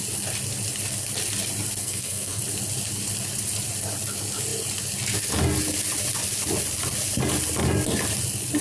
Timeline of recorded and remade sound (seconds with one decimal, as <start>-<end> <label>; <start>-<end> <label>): 0.0-1.8 recorded; 1.8-2.4 remade; 2.4-8.6 recorded